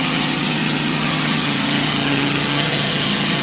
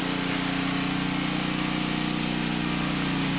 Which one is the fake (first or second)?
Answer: first